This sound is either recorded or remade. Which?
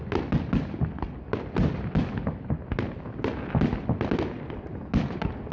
recorded